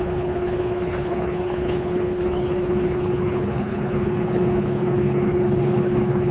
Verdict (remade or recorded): remade